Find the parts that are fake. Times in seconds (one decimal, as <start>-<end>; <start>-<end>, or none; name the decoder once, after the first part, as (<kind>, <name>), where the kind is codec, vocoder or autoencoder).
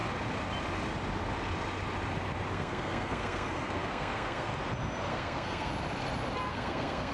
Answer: 2.5-4.5 (codec, SNAC); 5.1-5.7; 6.5-7.1